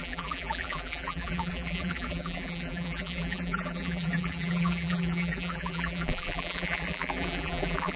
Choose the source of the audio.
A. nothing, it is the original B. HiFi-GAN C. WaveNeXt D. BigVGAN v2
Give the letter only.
D